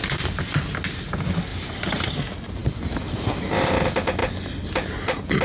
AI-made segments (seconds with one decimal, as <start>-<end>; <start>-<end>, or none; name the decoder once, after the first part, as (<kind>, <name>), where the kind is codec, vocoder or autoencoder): 0.0-0.7 (vocoder, BigVGAN v2); 2.6-3.4